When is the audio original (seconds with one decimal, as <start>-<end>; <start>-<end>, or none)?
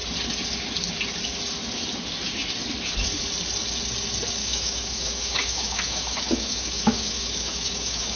0.0-4.4